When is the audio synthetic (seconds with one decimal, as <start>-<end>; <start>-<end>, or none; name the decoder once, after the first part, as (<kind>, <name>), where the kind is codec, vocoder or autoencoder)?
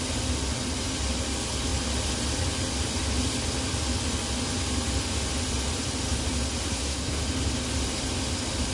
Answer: 6.6-7.2 (codec, SNAC)